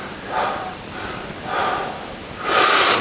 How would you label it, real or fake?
fake